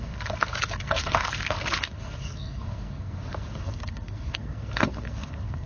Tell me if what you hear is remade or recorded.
remade